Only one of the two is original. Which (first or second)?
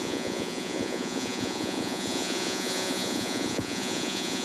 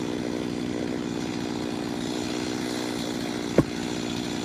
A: second